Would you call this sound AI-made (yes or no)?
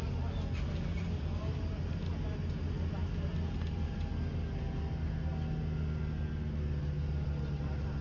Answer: no